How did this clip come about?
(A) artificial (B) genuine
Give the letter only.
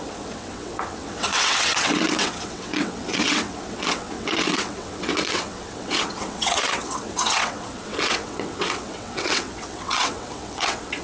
A